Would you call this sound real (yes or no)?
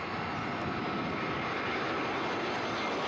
yes